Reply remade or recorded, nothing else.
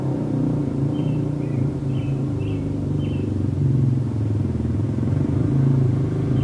remade